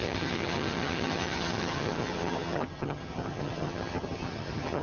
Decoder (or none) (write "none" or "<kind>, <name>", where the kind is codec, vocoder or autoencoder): vocoder, HiFi-GAN